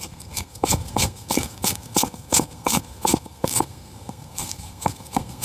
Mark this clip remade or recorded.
remade